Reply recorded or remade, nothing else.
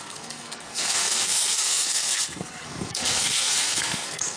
remade